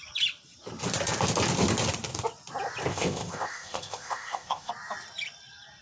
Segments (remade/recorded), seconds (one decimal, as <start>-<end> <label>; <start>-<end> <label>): 0.0-2.9 recorded; 2.9-4.7 remade; 4.7-5.8 recorded